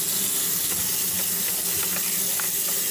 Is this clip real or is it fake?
real